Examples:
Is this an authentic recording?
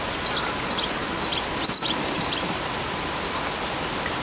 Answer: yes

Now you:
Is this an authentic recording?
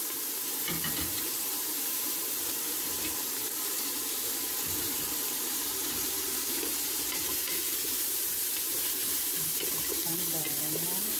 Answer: no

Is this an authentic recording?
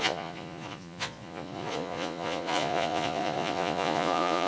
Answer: no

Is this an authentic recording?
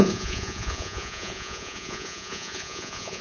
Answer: no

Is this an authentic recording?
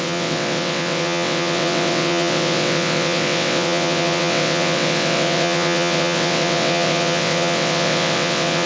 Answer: no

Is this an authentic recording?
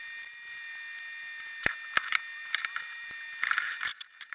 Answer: yes